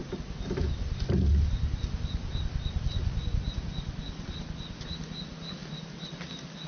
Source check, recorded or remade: recorded